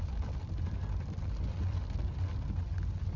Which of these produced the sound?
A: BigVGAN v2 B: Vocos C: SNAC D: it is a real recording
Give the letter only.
D